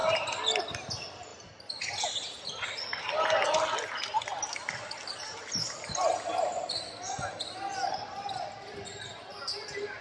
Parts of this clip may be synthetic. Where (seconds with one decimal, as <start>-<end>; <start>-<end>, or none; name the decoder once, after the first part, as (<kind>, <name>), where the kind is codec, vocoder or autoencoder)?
none

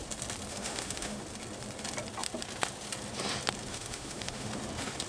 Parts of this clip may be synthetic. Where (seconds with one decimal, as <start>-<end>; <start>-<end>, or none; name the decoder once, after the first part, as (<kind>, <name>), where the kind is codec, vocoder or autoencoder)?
0.5-1.2 (autoencoder, DAC-VAE); 3.7-4.5

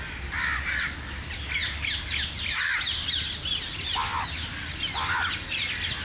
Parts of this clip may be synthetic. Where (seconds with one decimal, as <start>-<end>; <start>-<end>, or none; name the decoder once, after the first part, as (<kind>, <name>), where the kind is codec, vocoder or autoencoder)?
none

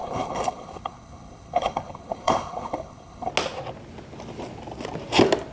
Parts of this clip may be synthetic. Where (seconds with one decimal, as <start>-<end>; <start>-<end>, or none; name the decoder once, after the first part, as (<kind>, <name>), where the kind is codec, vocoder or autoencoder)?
0.0-3.3 (codec, HILCodec)

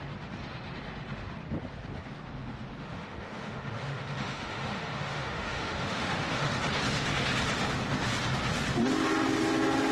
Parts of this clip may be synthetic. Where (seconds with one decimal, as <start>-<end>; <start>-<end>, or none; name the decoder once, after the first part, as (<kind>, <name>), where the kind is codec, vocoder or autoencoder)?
2.8-6.5 (autoencoder, DAC-VAE)